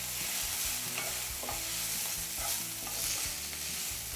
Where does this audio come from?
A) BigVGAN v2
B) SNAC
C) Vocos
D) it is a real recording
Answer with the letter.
D